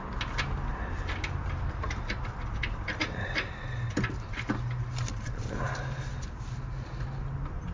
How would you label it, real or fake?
real